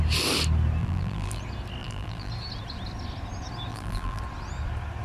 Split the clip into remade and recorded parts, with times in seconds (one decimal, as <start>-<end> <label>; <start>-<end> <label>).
0.0-0.8 recorded; 0.8-1.4 remade; 1.4-1.8 recorded; 1.8-2.3 remade; 2.3-3.7 recorded; 3.7-4.2 remade; 4.2-5.0 recorded